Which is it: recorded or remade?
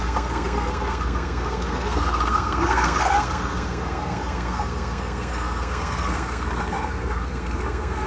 remade